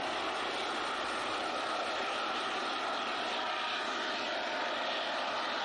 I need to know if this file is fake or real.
real